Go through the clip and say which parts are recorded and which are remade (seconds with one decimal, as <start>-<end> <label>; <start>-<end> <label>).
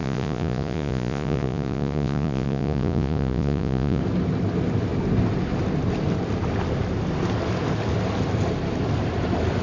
0.0-4.0 remade; 4.0-9.6 recorded